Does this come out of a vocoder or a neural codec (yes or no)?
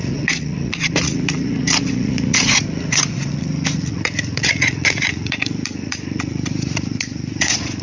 yes